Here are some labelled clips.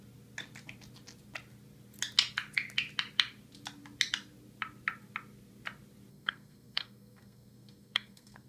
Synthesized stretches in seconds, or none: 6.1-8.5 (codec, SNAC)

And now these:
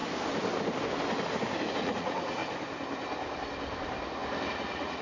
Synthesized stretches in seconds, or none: 1.7-2.4 (vocoder, Vocos); 4.5-5.0

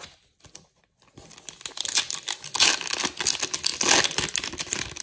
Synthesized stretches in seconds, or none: none

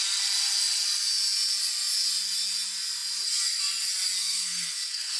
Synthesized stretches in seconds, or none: 4.2-5.2 (codec, SNAC)

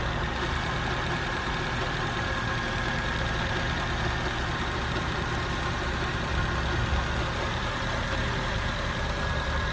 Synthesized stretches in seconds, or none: 0.0-6.3 (vocoder, BigVGAN v2); 7.2-9.7